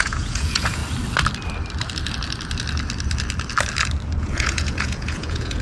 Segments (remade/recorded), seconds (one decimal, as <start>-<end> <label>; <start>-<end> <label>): 0.0-0.8 remade; 0.8-4.2 recorded; 4.2-5.6 remade